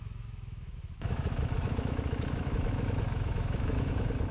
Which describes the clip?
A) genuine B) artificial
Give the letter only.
B